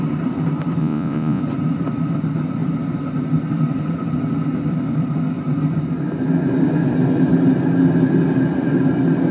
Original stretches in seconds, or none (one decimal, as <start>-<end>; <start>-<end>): 0.0-0.8; 1.4-9.3